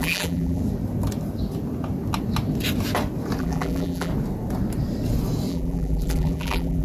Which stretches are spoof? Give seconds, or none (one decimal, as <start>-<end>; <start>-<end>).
0.0-0.6; 3.4-4.1; 5.5-6.8